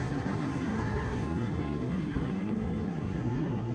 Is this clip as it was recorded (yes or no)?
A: no